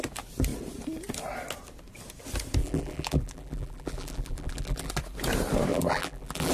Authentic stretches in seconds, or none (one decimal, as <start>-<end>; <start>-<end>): 0.0-2.6; 4.9-5.7